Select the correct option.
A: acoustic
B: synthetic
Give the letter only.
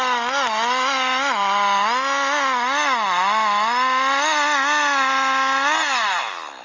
A